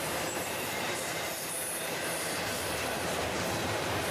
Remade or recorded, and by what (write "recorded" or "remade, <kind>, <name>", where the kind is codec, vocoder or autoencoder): remade, vocoder, BigVGAN v2